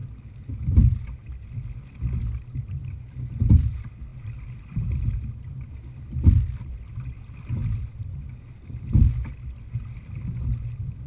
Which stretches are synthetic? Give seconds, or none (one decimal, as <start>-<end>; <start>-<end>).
none

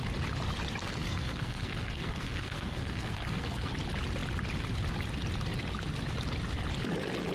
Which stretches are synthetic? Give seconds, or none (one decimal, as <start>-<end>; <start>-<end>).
0.8-3.7

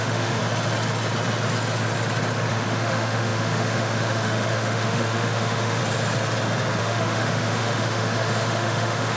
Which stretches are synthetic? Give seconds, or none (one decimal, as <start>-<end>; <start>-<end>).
0.0-0.4; 2.5-5.8; 6.8-9.2

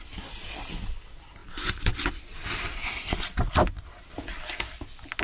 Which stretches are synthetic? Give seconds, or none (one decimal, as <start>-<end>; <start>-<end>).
1.4-3.7